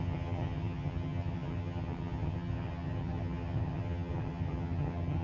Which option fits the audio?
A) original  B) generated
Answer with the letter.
B